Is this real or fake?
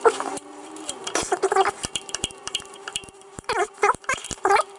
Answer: fake